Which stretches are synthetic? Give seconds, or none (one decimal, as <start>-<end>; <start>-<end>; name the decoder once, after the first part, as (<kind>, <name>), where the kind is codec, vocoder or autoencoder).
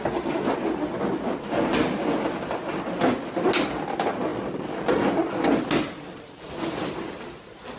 none